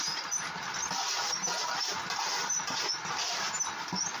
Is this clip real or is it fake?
real